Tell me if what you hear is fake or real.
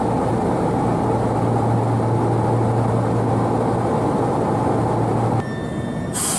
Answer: real